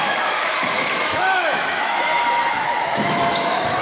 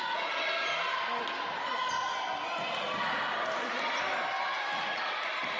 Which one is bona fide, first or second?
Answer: second